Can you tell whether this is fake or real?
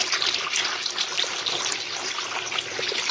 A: real